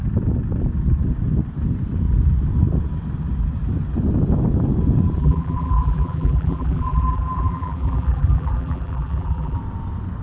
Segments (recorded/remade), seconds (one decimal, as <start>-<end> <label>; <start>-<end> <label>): 0.0-5.2 recorded; 5.2-9.6 remade; 9.6-10.2 recorded